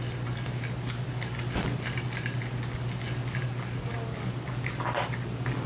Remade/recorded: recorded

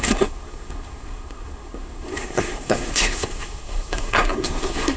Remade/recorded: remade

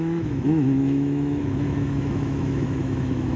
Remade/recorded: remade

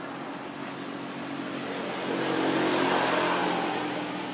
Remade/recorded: recorded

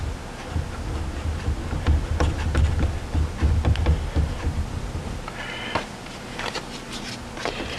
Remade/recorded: recorded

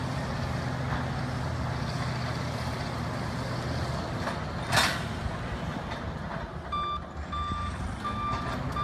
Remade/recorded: recorded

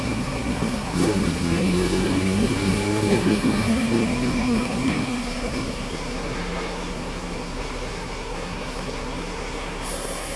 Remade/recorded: remade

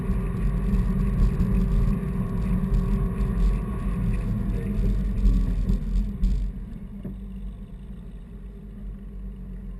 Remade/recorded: recorded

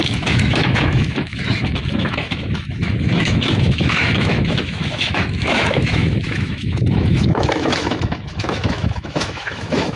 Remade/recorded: remade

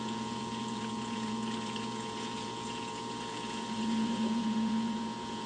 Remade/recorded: remade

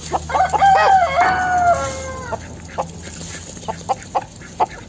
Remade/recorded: recorded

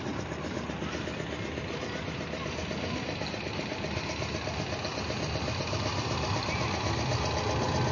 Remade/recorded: recorded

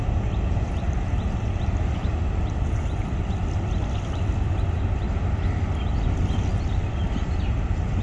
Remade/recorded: recorded